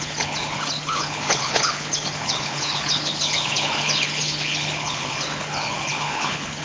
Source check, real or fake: fake